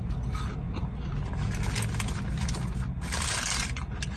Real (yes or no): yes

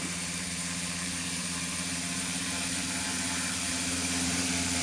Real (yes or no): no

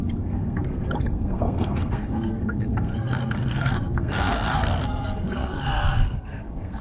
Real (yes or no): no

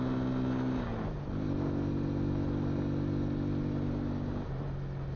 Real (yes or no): yes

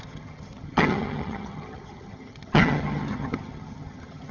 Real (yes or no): no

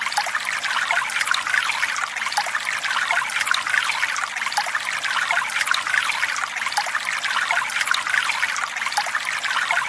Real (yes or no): yes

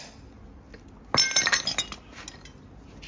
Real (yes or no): yes